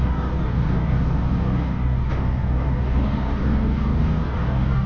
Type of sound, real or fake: fake